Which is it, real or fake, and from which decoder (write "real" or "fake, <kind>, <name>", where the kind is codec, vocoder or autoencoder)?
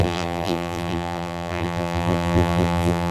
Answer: fake, vocoder, BigVGAN v2